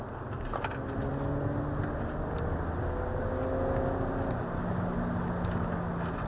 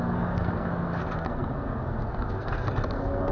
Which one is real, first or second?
first